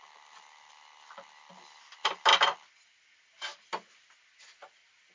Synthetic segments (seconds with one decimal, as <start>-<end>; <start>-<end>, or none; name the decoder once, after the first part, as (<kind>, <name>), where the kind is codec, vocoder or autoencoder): none